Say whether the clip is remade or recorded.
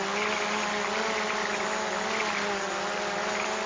recorded